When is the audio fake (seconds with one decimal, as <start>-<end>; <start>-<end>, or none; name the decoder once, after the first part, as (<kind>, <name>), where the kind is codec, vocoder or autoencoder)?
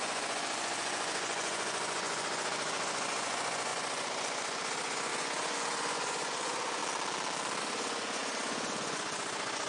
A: 0.0-6.8 (vocoder, Vocos); 7.6-9.7